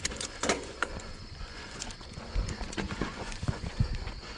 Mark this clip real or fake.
fake